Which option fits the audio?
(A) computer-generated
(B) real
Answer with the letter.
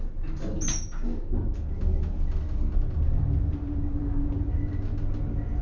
B